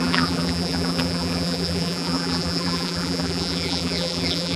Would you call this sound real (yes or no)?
no